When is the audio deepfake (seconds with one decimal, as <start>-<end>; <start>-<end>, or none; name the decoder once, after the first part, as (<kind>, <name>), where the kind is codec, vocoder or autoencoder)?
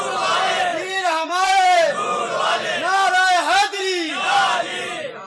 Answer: 0.7-2.4 (vocoder, Vocos); 4.1-5.3